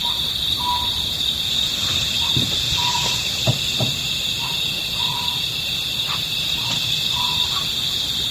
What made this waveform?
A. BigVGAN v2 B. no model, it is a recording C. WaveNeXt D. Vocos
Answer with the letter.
B